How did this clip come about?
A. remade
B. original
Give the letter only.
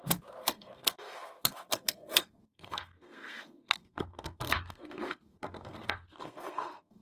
A